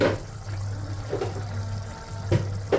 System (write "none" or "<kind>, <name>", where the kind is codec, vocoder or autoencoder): none